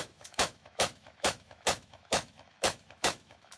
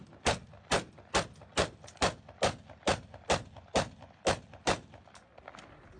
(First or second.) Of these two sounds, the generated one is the first